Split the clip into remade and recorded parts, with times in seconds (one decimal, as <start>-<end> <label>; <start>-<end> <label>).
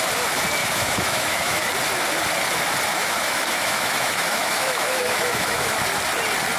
0.0-0.6 recorded; 0.6-1.7 remade; 1.7-2.9 recorded; 2.9-5.8 remade; 5.8-6.6 recorded